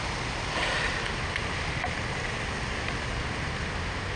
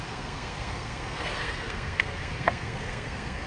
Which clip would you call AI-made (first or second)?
second